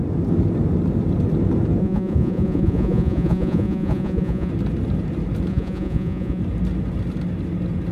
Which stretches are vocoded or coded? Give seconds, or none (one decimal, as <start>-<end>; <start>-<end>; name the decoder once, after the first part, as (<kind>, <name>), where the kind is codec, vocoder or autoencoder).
1.8-4.5 (vocoder, Vocos); 5.5-6.4